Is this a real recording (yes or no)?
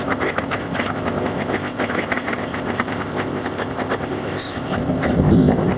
no